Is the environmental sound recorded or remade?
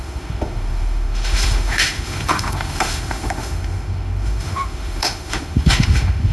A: remade